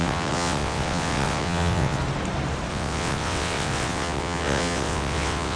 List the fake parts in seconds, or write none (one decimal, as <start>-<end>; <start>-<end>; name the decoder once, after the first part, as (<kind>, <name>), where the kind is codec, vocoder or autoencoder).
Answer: 0.0-2.0 (vocoder, WaveNeXt); 2.7-5.6